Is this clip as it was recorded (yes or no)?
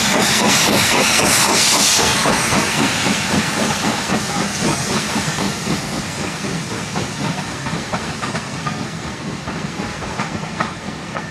no